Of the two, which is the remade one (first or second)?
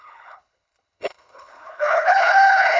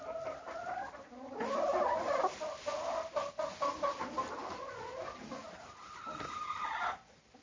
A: first